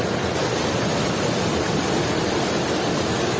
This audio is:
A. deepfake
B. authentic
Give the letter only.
B